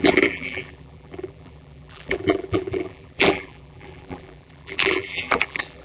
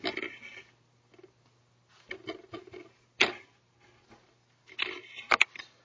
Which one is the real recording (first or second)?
second